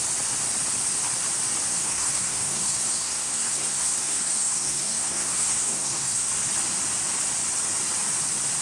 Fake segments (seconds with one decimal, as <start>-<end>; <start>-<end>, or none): 1.7-6.3